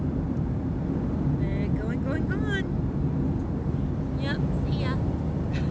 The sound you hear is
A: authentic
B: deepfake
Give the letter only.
A